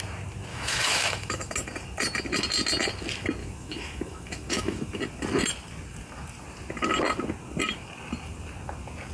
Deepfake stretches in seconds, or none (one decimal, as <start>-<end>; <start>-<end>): 0.5-1.5; 3.4-5.0